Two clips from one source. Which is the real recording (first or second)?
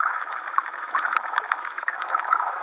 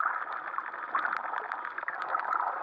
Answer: second